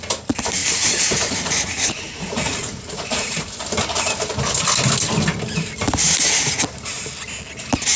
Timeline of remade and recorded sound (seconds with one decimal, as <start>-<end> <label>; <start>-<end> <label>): 0.0-0.6 recorded; 0.6-3.6 remade; 3.6-8.0 recorded